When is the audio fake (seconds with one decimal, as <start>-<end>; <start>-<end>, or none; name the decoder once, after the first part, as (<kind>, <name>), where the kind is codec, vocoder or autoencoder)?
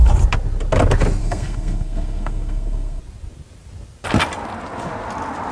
1.2-3.0 (codec, SNAC)